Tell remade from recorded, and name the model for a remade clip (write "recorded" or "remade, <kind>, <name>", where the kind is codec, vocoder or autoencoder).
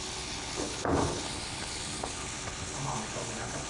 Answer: remade, codec, HILCodec